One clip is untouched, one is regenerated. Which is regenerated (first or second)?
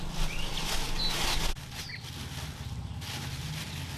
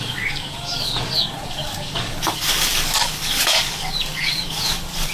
second